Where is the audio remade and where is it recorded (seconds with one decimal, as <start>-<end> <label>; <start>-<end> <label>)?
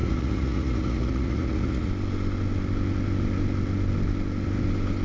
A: 0.0-1.9 remade; 1.9-5.0 recorded